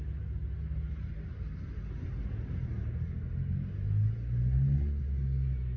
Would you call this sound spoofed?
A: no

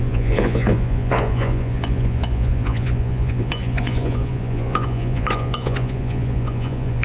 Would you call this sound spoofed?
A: yes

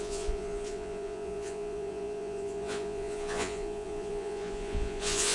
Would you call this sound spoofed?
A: yes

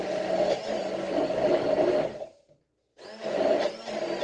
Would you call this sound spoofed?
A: no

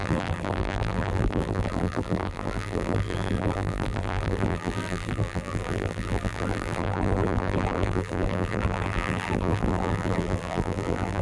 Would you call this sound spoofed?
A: yes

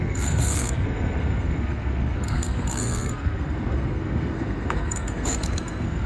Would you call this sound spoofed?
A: yes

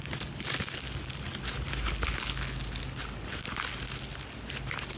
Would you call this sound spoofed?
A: no